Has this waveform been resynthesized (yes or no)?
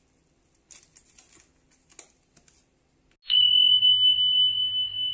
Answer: no